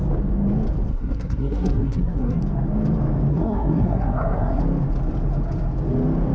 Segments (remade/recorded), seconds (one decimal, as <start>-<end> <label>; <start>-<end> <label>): 0.0-0.9 recorded; 0.9-2.4 remade; 2.4-3.3 recorded; 3.3-4.6 remade; 4.6-6.3 recorded